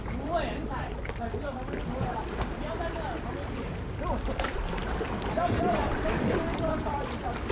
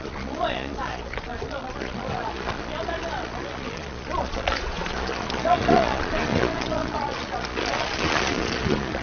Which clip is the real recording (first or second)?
first